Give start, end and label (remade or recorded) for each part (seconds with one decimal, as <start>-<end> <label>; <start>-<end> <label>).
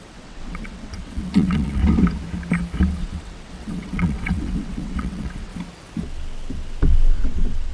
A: 0.0-1.8 remade; 1.8-3.0 recorded; 3.0-5.5 remade; 5.5-7.1 recorded; 7.1-7.7 remade